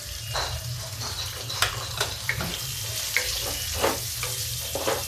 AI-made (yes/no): yes